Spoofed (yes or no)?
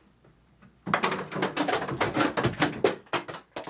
no